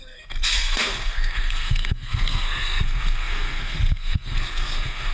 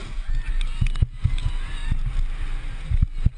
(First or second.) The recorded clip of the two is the second